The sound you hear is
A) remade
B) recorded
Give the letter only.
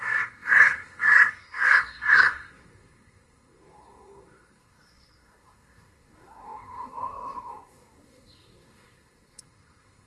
A